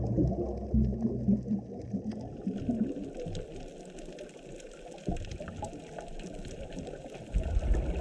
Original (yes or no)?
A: yes